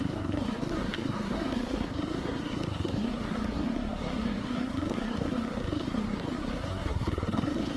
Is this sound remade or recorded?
remade